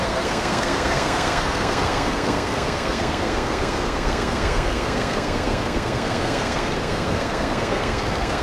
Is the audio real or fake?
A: fake